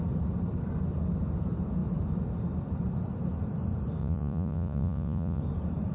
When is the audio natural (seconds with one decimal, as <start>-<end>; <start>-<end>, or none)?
0.0-4.0; 5.4-5.9

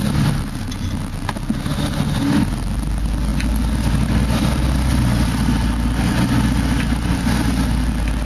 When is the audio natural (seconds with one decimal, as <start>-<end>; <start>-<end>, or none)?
0.0-8.3

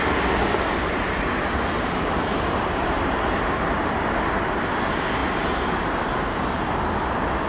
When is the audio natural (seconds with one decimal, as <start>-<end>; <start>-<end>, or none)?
0.0-0.4; 3.4-5.2; 6.0-7.5

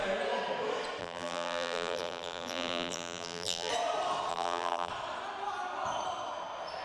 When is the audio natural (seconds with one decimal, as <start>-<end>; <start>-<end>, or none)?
0.0-1.0; 3.7-4.3; 4.9-6.8